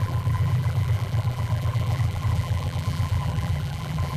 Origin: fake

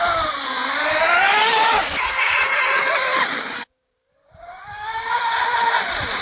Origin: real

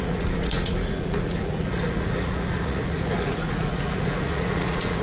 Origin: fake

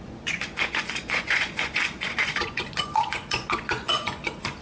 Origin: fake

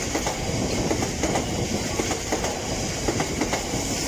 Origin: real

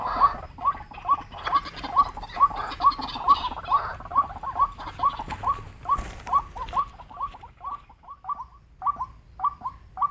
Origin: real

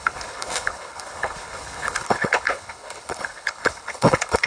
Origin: fake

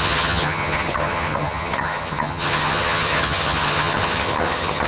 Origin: fake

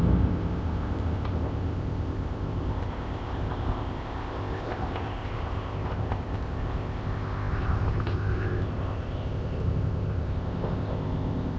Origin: fake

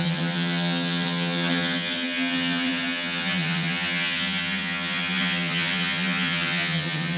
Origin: fake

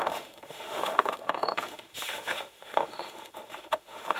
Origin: fake